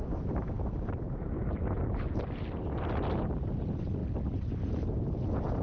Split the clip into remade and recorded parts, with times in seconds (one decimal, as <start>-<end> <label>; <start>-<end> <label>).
0.0-5.6 recorded